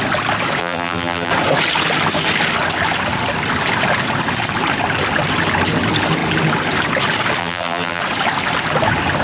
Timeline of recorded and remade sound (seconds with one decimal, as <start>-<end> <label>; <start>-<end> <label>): 0.0-0.6 recorded; 0.6-1.3 remade; 1.3-7.4 recorded; 7.4-8.0 remade; 8.0-9.2 recorded